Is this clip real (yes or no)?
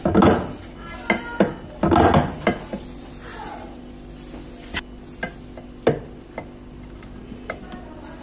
yes